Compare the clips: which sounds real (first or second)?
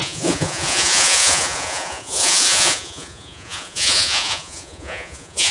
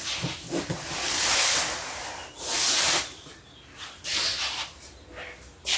second